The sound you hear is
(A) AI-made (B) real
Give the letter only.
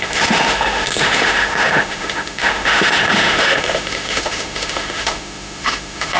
A